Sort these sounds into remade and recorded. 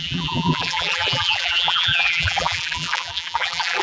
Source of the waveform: remade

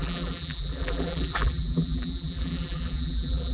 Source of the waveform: remade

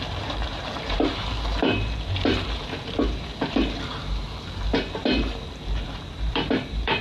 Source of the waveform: remade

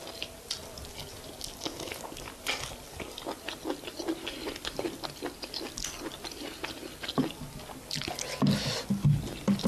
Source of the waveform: recorded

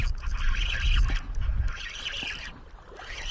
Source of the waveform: recorded